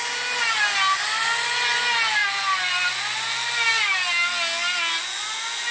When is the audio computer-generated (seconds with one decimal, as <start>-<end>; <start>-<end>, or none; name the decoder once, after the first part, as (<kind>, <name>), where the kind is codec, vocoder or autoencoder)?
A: none